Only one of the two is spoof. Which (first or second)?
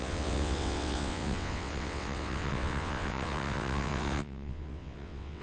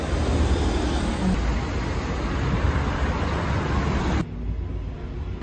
first